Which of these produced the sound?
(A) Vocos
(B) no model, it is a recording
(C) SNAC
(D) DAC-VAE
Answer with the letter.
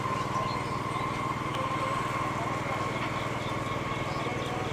B